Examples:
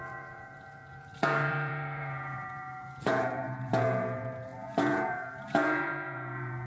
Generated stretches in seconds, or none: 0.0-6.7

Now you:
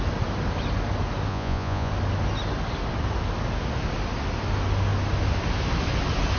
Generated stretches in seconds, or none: 1.3-1.9

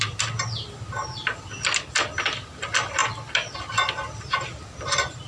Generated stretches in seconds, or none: none

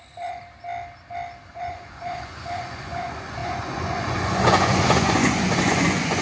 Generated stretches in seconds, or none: 0.0-0.4; 1.5-6.2

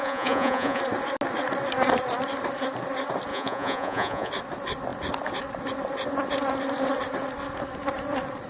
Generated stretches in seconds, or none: 0.0-0.8; 3.3-4.3